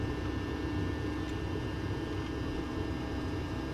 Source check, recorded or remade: recorded